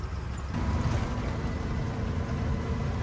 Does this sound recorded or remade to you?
recorded